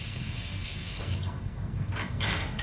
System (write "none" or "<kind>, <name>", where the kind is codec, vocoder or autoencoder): codec, SNAC